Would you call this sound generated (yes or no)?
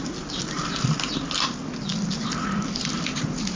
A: no